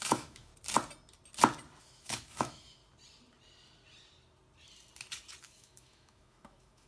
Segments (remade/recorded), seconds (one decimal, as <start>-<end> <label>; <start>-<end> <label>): 0.0-0.5 remade; 0.5-1.8 recorded; 1.8-2.8 remade; 2.8-5.4 recorded; 5.4-6.9 remade